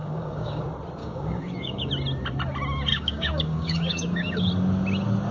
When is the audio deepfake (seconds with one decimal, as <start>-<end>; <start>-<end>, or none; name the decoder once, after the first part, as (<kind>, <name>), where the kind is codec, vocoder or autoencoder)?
0.0-0.6 (codec, DAC); 1.0-1.9; 2.9-4.5